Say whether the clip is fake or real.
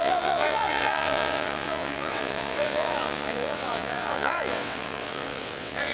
fake